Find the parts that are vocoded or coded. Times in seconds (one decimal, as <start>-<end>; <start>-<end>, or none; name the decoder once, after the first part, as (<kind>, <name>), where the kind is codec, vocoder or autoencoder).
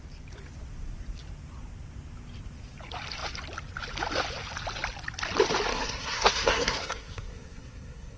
5.7-8.2 (codec, SNAC)